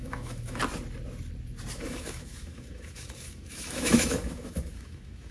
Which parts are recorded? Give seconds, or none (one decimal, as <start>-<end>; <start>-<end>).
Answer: 0.6-1.7

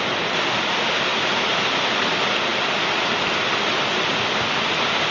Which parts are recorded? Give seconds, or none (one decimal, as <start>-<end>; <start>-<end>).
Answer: 0.0-5.1

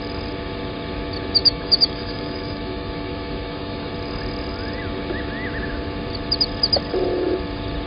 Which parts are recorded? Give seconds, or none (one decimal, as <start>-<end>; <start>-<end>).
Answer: 0.0-1.4; 3.9-7.9